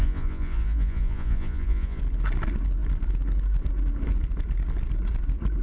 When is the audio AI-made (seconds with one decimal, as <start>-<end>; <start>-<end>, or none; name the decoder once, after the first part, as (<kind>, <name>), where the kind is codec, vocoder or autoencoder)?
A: 0.0-2.0 (vocoder, Vocos)